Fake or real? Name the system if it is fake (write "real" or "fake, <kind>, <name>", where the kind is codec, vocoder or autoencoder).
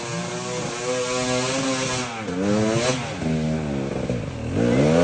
real